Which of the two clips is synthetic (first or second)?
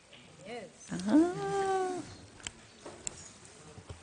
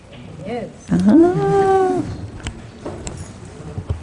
second